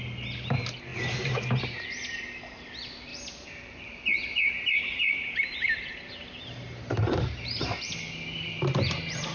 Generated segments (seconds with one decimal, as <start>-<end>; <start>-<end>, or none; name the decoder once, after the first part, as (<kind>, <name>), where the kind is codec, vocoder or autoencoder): 3.1-7.9 (vocoder, BigVGAN v2)